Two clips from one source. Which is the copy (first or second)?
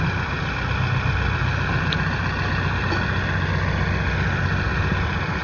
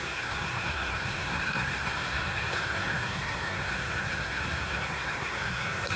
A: second